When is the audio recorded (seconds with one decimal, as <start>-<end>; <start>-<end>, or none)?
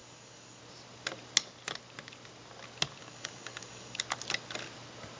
0.6-3.0; 4.0-5.2